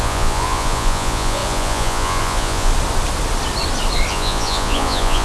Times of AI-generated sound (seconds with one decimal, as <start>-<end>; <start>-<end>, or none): 0.0-2.7; 4.1-5.2